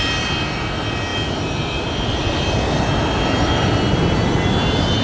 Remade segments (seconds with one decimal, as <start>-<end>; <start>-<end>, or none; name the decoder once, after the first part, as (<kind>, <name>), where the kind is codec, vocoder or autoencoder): none